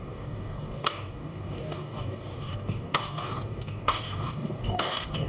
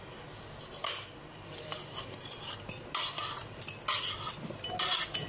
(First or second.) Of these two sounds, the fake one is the first